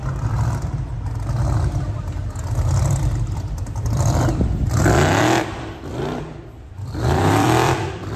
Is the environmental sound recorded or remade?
remade